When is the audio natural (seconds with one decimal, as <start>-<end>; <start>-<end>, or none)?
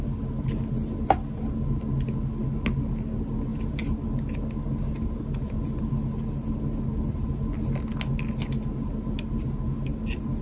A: 0.0-10.4